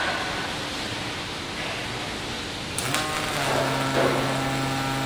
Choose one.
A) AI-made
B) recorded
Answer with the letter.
B